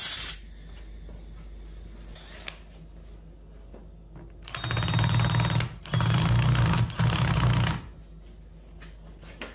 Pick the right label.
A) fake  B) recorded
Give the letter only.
B